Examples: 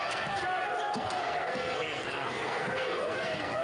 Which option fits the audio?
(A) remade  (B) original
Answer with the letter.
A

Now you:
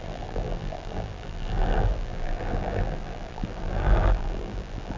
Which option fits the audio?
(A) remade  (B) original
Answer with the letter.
A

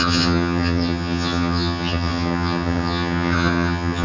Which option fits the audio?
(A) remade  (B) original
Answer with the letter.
A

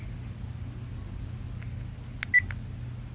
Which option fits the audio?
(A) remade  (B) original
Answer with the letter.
B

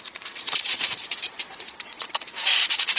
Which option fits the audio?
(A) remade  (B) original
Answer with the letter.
A